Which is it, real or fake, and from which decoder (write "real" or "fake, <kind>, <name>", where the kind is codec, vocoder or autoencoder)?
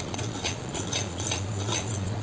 fake, vocoder, Vocos